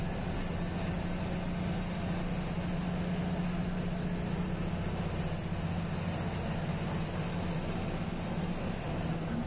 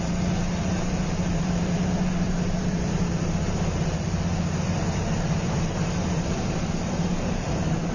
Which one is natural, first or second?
first